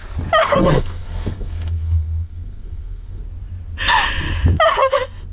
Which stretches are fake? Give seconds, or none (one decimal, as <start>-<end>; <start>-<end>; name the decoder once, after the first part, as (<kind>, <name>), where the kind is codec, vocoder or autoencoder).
0.4-3.2 (codec, SNAC)